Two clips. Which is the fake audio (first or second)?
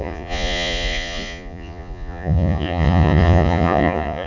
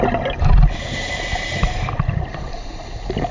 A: first